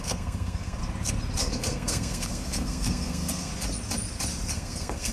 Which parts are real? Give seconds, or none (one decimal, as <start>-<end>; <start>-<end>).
0.8-1.4; 3.5-4.5